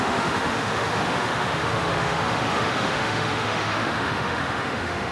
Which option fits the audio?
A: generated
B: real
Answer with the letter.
A